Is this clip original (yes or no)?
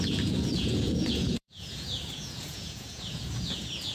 no